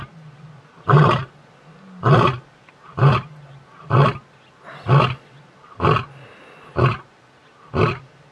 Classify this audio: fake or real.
real